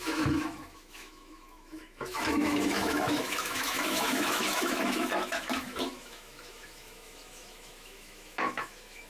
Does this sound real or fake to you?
fake